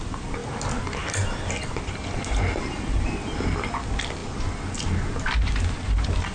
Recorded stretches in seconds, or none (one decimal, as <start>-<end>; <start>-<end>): 0.0-6.3